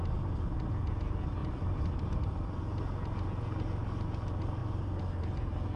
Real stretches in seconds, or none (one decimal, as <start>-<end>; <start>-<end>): 0.0-1.4; 2.2-4.6; 5.2-5.8